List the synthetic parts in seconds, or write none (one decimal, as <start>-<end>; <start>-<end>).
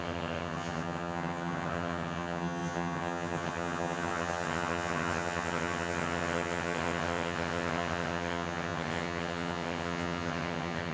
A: 0.0-10.9